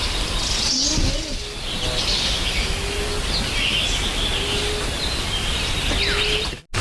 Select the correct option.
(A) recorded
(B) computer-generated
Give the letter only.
A